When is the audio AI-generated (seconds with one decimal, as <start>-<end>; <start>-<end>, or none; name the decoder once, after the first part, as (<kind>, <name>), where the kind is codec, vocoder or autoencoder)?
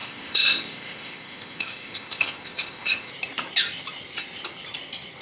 0.0-3.1 (codec, ZipCodec)